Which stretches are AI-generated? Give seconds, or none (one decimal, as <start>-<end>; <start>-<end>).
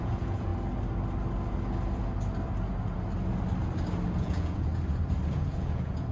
0.0-0.5; 4.2-4.7; 5.3-6.1